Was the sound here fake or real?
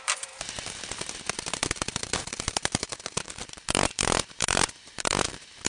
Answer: fake